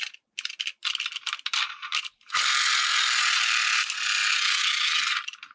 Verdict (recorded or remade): recorded